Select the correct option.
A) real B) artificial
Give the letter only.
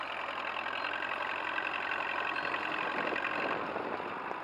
A